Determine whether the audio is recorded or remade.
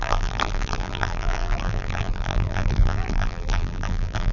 remade